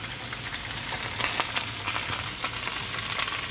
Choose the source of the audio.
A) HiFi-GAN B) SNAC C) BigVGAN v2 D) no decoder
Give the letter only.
D